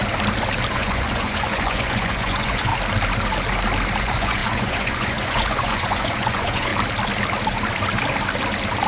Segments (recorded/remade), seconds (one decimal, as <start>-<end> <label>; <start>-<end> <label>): 0.0-0.7 recorded; 0.7-2.7 remade; 2.7-4.0 recorded; 4.0-6.7 remade; 6.7-8.9 recorded